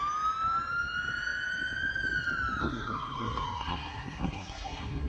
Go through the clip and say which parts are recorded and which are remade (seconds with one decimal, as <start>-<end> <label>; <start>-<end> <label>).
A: 0.0-2.6 recorded; 2.6-5.1 remade